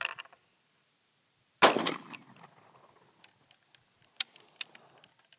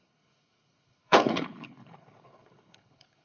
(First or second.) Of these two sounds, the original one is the first